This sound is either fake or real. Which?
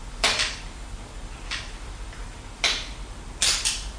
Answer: real